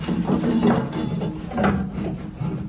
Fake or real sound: real